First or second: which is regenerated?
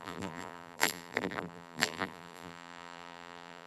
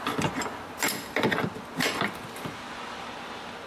first